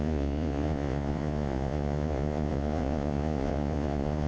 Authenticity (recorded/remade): remade